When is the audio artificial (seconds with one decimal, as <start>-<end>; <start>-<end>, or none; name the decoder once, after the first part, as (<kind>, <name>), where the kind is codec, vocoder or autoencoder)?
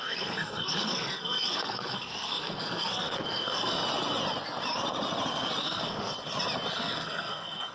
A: 0.0-3.8 (codec, SNAC); 5.6-6.1; 6.7-7.7